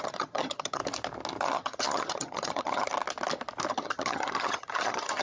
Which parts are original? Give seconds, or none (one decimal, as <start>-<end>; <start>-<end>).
0.8-1.4; 2.9-3.7